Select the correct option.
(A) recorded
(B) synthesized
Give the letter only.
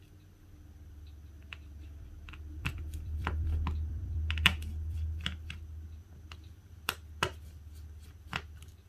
B